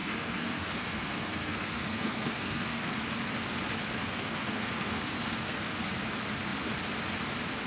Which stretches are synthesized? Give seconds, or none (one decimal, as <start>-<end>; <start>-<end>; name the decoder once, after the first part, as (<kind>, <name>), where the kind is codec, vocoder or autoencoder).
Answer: 0.0-2.9 (codec, SNAC); 4.0-5.7